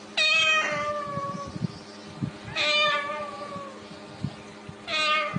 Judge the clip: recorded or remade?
recorded